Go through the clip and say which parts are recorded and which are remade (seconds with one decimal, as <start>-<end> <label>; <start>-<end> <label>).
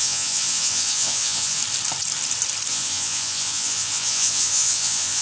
0.0-1.6 remade; 1.6-2.7 recorded; 2.7-5.2 remade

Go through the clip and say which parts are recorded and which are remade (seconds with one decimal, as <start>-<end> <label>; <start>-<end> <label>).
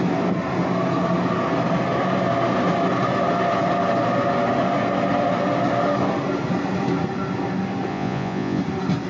0.0-7.9 recorded; 7.9-8.6 remade; 8.6-9.1 recorded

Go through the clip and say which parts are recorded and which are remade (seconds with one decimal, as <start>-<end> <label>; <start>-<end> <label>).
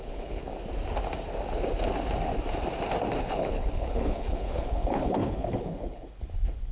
0.0-0.5 remade; 0.5-3.2 recorded; 3.2-6.7 remade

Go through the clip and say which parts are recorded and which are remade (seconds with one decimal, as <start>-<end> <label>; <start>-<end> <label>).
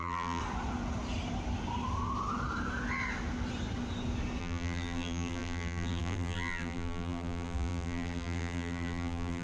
0.0-0.4 remade; 0.4-4.4 recorded; 4.4-9.4 remade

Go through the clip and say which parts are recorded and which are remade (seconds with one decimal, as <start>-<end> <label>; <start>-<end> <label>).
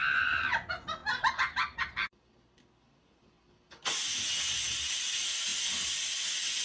0.0-6.6 recorded